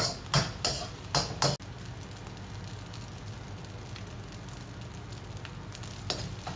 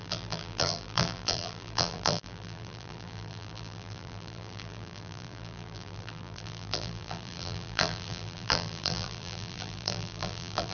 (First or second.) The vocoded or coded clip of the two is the second